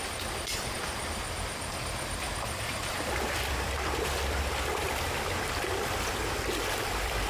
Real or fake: fake